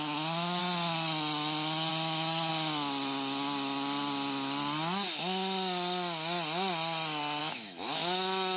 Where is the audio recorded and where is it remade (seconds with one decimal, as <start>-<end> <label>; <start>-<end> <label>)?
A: 0.0-0.6 remade; 0.6-1.9 recorded; 1.9-2.5 remade; 2.5-7.4 recorded; 7.4-8.6 remade